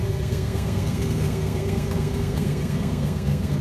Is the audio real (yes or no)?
no